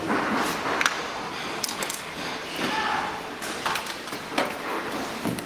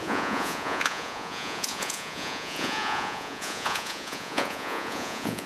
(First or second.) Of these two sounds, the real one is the first